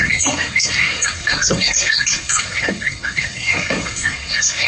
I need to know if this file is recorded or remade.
remade